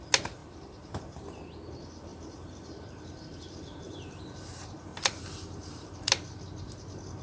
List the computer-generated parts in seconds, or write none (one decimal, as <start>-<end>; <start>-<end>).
0.4-1.1; 2.1-4.2; 4.9-6.1